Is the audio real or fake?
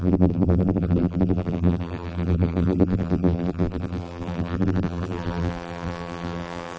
fake